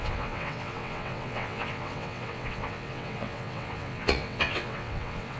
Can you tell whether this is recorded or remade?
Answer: remade